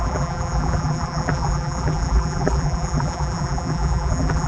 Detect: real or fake fake